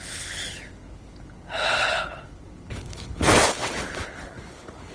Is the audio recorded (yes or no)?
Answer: no